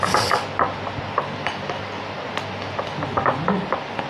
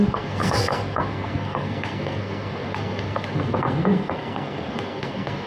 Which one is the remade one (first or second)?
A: second